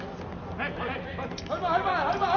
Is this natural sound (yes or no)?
yes